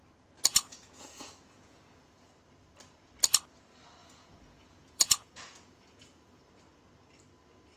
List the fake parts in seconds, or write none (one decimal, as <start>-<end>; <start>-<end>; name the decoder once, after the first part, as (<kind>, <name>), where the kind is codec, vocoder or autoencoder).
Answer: 0.5-2.3 (vocoder, Vocos); 4.0-6.4